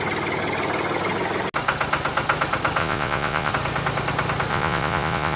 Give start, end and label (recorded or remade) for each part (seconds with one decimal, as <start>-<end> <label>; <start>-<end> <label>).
0.0-2.8 recorded; 2.8-3.5 remade; 3.5-4.5 recorded; 4.5-5.4 remade